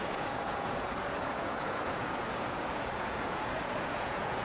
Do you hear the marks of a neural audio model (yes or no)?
yes